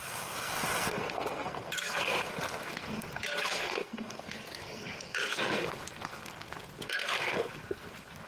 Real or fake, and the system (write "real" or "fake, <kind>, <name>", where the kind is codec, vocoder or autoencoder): fake, codec, SNAC